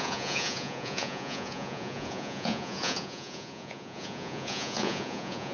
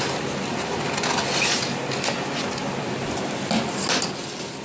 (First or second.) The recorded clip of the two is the second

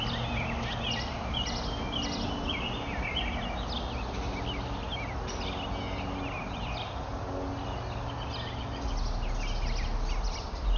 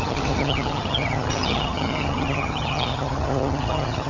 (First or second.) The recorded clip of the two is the first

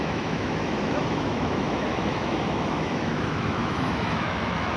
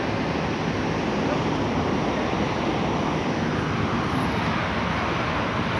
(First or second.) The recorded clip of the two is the second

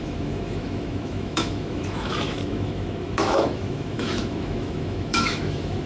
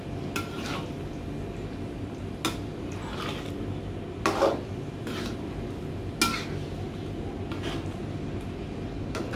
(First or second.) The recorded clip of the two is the second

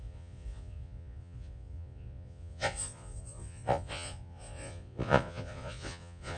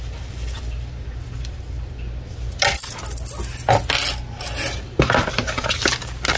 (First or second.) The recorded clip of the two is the second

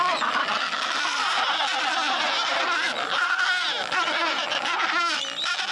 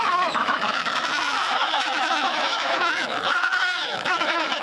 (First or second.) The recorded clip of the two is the first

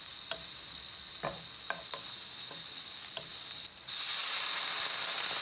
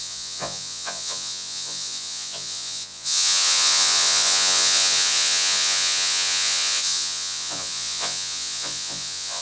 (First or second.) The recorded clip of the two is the first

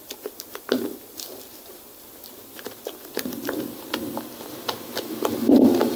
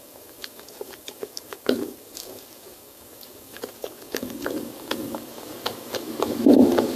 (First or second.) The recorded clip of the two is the first